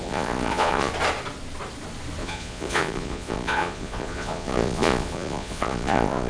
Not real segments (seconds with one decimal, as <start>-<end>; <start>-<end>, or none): 0.0-0.9; 2.2-6.3

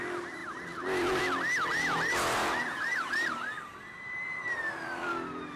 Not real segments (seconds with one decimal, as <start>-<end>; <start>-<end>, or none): 0.4-1.2; 1.7-5.1

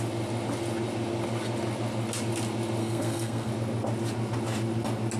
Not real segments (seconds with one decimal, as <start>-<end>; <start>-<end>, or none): 2.8-3.5